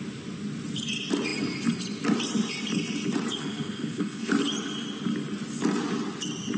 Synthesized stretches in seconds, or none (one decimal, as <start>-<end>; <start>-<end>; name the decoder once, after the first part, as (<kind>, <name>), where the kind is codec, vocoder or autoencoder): 3.4-4.3 (codec, SNAC)